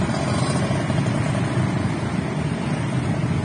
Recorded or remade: recorded